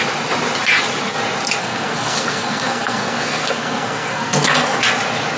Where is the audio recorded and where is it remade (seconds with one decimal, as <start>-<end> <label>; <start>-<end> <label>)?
0.0-1.6 recorded; 1.6-4.8 remade; 4.8-5.4 recorded